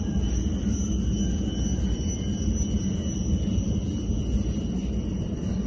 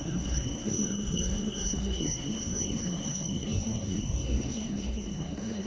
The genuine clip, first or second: first